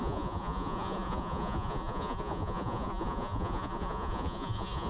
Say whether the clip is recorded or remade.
remade